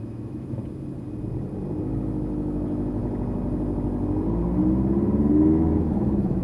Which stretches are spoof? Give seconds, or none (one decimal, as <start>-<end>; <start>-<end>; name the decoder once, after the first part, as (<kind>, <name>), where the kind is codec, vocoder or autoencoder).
0.0-0.6 (autoencoder, DAC-VAE); 1.8-3.0; 5.3-6.4